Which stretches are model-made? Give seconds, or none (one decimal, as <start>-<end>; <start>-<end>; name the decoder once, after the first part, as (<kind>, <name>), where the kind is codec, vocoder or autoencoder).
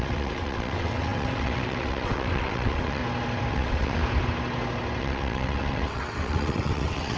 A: 0.0-3.0 (vocoder, WaveNeXt); 3.5-4.0; 5.0-7.2